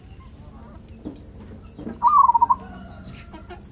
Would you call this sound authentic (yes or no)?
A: yes